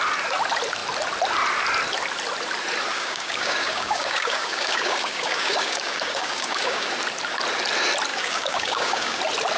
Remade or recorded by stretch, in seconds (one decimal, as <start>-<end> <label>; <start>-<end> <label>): 0.0-2.9 recorded; 2.9-6.9 remade; 6.9-8.1 recorded; 8.1-9.2 remade; 9.2-9.6 recorded